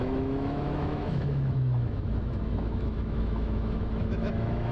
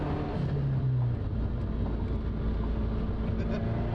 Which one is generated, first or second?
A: first